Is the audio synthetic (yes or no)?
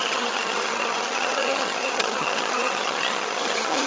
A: yes